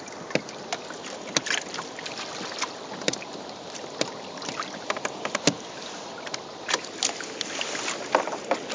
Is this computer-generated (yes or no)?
no